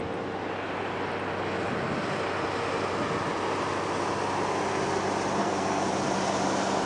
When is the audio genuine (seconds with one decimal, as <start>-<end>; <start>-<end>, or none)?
0.0-5.4; 5.9-6.9